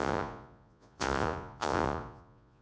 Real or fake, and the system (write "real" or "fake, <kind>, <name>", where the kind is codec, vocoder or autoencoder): fake, vocoder, Vocos